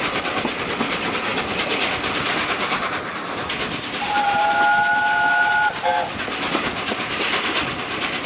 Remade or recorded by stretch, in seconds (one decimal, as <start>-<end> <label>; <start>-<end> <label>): 0.0-8.3 recorded

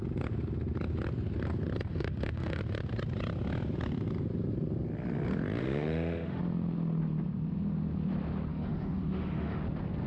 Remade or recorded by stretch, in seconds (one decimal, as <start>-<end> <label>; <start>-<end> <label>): 0.0-1.9 recorded; 1.9-2.6 remade; 2.6-5.6 recorded; 5.6-6.4 remade; 6.4-8.5 recorded; 8.5-9.6 remade; 9.6-10.1 recorded

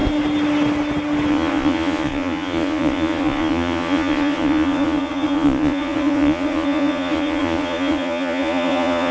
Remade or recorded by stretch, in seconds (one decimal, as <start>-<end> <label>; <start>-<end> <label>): 0.0-1.3 recorded; 1.3-9.1 remade

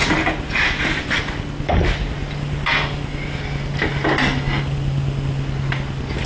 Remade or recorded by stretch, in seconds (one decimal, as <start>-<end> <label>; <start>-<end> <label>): 0.0-6.3 recorded

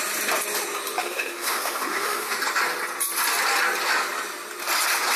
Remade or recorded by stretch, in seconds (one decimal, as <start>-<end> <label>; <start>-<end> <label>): 0.0-1.0 recorded; 1.0-2.4 remade; 2.4-5.2 recorded